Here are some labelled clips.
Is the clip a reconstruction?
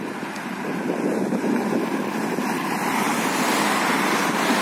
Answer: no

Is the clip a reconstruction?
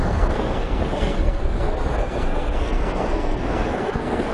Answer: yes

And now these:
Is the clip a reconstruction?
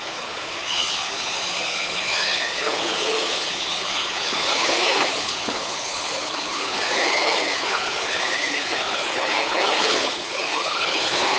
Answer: yes